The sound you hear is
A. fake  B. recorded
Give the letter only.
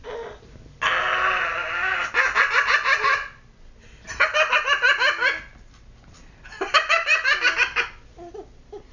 B